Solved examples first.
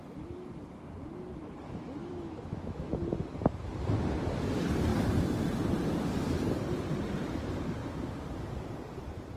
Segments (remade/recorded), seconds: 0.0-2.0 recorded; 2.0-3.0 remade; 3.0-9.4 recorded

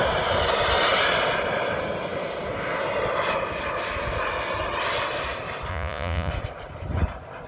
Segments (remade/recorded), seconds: 0.0-5.7 recorded; 5.7-6.3 remade; 6.3-7.5 recorded

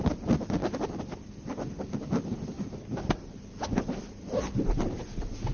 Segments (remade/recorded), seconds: 0.0-5.5 recorded

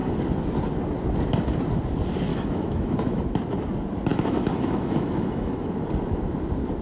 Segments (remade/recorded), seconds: 0.0-2.3 recorded; 2.3-3.2 remade; 3.2-4.1 recorded; 4.1-5.7 remade; 5.7-6.8 recorded

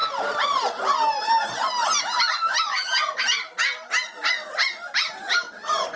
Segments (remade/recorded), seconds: 0.0-2.7 recorded; 2.7-3.2 remade; 3.2-6.0 recorded

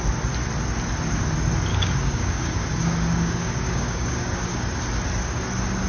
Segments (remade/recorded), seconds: 0.0-1.7 recorded; 1.7-4.8 remade; 4.8-5.9 recorded

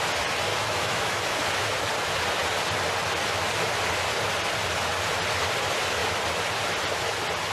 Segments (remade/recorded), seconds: 0.0-0.5 recorded; 0.5-1.7 remade; 1.7-7.5 recorded